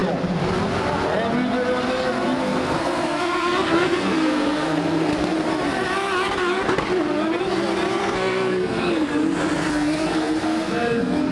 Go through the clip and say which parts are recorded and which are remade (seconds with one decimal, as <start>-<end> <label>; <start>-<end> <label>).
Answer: 0.0-2.4 recorded; 2.4-5.1 remade; 5.1-8.0 recorded; 8.0-9.1 remade; 9.1-9.7 recorded; 9.7-11.3 remade